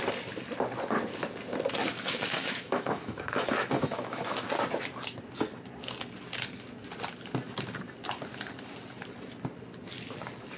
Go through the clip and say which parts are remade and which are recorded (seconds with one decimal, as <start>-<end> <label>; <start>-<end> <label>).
0.0-1.9 recorded; 1.9-4.5 remade; 4.5-10.6 recorded